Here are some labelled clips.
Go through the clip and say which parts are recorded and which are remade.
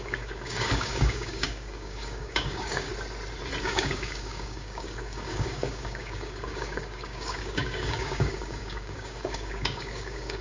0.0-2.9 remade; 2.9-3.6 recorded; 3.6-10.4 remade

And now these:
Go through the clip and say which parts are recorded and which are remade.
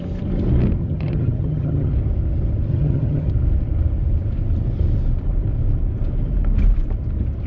0.0-0.8 recorded; 0.8-1.9 remade; 1.9-2.7 recorded; 2.7-3.3 remade; 3.3-7.5 recorded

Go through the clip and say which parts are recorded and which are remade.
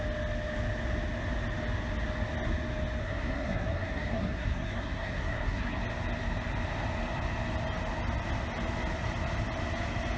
0.0-3.0 recorded; 3.0-5.8 remade; 5.8-10.2 recorded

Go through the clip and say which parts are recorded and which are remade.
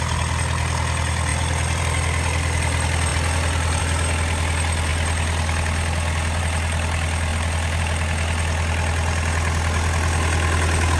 0.0-11.0 recorded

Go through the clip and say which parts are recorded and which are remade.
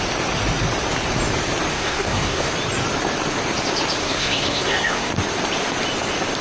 0.0-1.7 recorded; 1.7-2.5 remade; 2.5-4.0 recorded; 4.0-5.1 remade; 5.1-6.4 recorded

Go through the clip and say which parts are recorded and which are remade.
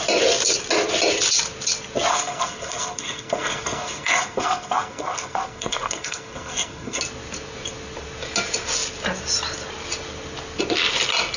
0.0-2.1 recorded; 2.1-7.0 remade; 7.0-11.4 recorded